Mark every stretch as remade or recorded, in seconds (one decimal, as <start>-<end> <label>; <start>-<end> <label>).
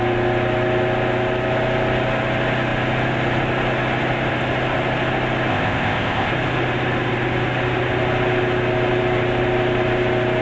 0.0-5.5 recorded; 5.5-6.3 remade; 6.3-10.4 recorded